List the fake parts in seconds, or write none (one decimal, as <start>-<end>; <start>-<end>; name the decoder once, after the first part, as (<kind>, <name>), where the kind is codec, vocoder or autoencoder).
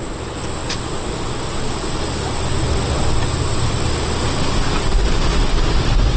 none